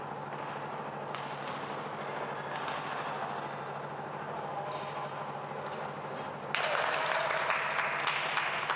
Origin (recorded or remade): recorded